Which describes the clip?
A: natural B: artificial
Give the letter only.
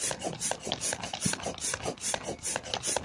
B